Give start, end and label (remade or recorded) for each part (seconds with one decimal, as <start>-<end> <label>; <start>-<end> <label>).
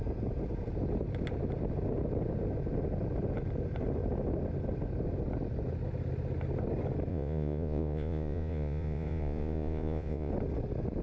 0.0-7.1 recorded; 7.1-10.3 remade; 10.3-11.0 recorded